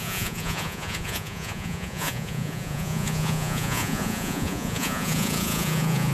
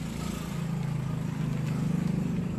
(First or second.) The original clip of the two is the second